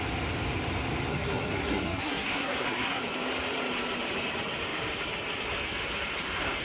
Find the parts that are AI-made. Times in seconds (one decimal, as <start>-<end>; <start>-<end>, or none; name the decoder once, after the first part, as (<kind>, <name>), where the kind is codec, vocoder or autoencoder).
1.1-3.0 (codec, SNAC)